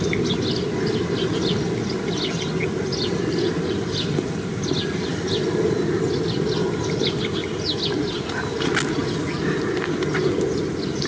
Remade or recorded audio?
recorded